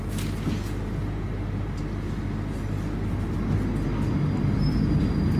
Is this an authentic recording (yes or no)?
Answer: yes